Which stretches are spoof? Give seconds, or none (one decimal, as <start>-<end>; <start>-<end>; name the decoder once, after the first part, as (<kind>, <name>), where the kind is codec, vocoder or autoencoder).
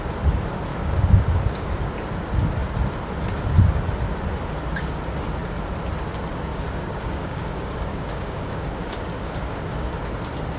0.7-1.9 (codec, DAC); 6.5-9.9